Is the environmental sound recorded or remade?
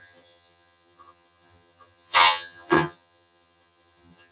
remade